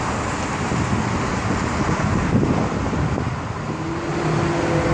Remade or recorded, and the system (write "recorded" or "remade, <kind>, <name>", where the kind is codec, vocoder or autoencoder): recorded